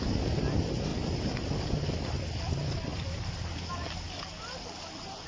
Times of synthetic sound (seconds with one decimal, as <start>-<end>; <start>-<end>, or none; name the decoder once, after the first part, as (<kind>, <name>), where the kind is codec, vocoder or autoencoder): none